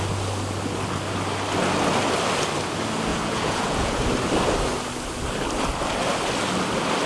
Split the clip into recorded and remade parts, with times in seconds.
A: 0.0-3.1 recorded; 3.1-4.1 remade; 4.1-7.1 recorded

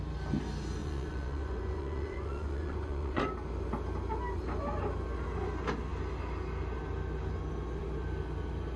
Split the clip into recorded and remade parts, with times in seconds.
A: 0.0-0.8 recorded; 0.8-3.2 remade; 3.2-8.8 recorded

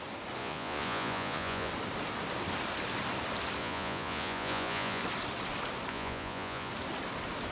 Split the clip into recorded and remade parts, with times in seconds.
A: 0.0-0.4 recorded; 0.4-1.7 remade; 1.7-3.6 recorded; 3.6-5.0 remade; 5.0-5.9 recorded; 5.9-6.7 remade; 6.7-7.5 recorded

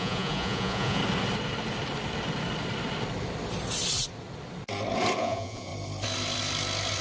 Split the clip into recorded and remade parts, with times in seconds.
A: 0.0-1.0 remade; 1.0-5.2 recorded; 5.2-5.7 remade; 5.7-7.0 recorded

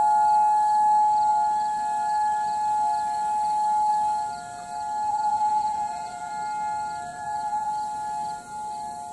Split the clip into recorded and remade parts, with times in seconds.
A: 0.0-5.1 recorded; 5.1-6.3 remade; 6.3-7.1 recorded; 7.1-7.7 remade; 7.7-9.1 recorded

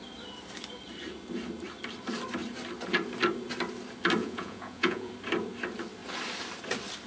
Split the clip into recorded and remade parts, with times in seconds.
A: 0.0-4.2 recorded; 4.2-5.1 remade; 5.1-7.1 recorded

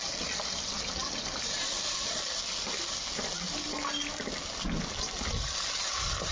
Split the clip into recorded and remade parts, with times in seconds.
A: 0.0-6.3 recorded